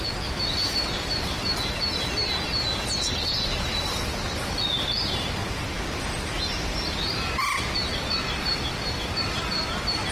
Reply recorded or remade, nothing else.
recorded